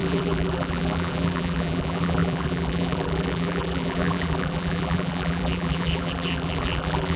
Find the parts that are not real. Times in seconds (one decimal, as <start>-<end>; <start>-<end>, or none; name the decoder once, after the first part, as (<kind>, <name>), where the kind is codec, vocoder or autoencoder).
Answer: 0.0-7.2 (vocoder, BigVGAN v2)